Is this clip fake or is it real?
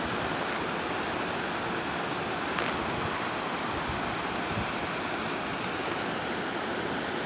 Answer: real